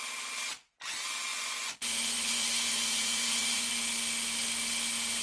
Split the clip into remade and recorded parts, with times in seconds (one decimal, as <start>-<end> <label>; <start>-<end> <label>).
0.0-1.3 recorded; 1.3-3.8 remade; 3.8-5.2 recorded